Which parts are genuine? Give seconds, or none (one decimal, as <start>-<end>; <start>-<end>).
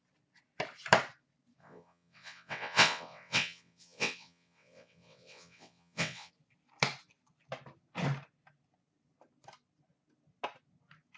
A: 0.0-1.6; 6.3-11.2